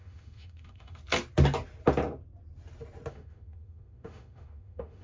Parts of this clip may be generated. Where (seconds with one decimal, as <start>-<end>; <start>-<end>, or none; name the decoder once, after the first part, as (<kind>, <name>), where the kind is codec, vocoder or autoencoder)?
0.0-1.0 (autoencoder, DAC-VAE); 3.1-5.0